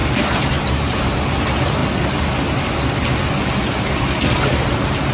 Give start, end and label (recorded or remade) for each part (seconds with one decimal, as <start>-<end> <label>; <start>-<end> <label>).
0.0-5.1 recorded